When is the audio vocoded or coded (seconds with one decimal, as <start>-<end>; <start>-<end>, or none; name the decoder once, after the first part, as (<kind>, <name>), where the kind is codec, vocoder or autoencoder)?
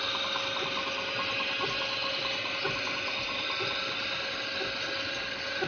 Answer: none